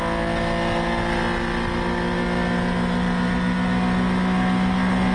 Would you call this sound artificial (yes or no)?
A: no